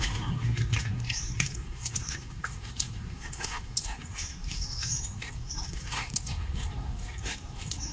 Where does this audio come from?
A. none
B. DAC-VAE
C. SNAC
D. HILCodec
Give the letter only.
C